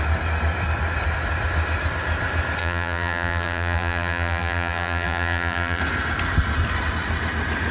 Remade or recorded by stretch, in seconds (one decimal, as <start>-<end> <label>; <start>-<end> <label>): 0.0-2.6 recorded; 2.6-5.8 remade; 5.8-7.7 recorded